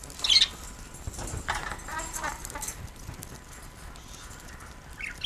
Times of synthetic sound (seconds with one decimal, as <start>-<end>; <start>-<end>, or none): none